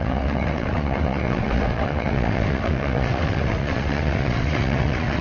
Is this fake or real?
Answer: fake